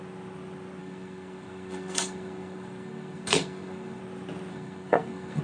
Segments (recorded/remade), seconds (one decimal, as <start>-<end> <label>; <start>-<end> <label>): 0.0-0.8 recorded; 0.8-4.0 remade; 4.0-4.5 recorded; 4.5-5.4 remade